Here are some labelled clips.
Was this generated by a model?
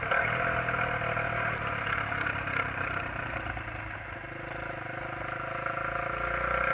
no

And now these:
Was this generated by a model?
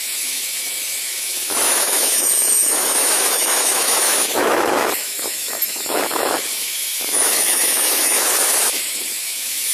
yes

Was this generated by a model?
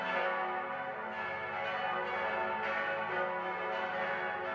no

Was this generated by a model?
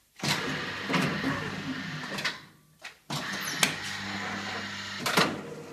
no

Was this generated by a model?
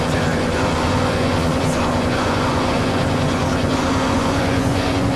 yes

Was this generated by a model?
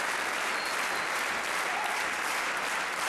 no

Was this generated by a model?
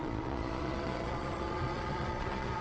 yes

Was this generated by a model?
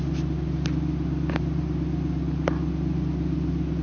no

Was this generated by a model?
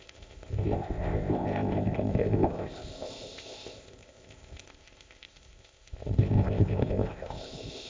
yes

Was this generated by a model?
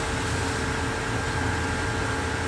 no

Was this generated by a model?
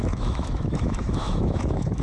yes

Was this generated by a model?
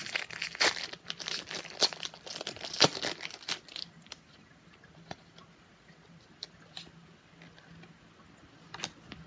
no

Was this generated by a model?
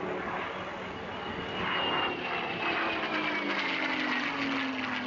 no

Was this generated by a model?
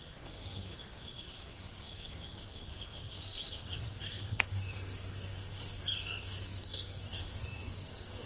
yes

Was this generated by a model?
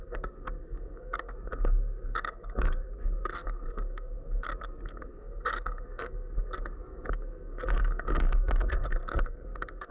yes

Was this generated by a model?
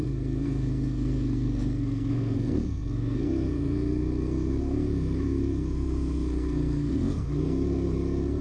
yes